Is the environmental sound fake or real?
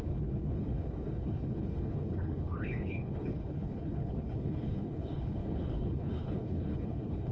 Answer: fake